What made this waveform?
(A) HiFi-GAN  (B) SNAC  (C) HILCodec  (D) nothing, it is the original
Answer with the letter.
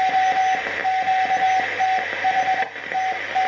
D